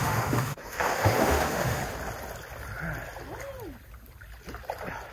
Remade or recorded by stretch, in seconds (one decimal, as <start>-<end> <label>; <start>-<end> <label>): 0.0-1.8 remade; 1.8-5.1 recorded